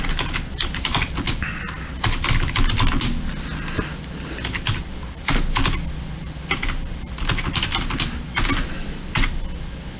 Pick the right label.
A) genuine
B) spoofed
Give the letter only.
A